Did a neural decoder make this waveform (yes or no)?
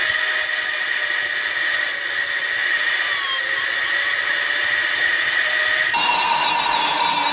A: no